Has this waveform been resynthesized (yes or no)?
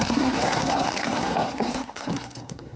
yes